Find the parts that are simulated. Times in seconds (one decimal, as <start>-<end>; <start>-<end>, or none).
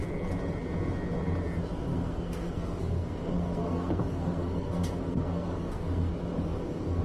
1.9-6.1; 6.5-7.0